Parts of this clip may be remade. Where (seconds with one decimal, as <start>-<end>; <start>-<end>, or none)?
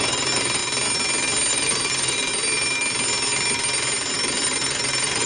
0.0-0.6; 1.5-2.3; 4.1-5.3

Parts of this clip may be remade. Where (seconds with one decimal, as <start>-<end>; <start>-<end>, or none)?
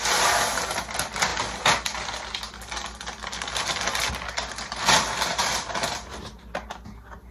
none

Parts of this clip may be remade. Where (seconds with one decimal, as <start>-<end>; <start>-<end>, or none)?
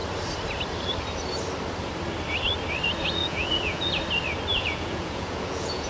3.2-3.9; 4.5-5.9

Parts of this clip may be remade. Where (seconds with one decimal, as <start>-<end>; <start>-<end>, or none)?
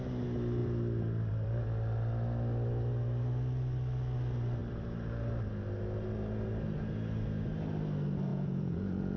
8.3-9.2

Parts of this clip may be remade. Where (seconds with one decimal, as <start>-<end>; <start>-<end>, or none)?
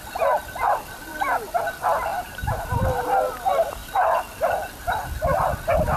2.1-2.6